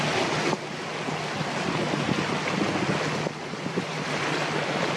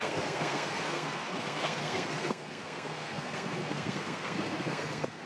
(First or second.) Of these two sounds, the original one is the first